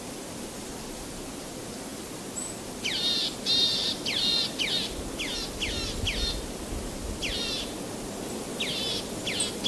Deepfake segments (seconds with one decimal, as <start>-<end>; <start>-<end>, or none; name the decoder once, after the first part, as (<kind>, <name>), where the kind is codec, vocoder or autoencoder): none